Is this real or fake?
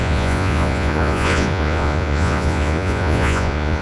fake